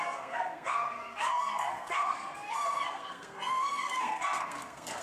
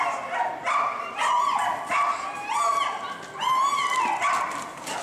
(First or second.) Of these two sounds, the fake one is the first